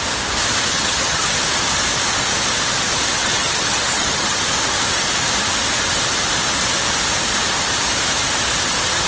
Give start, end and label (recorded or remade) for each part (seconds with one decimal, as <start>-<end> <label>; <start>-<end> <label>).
0.0-0.7 recorded; 0.7-1.3 remade; 1.3-3.2 recorded; 3.2-4.4 remade; 4.4-9.1 recorded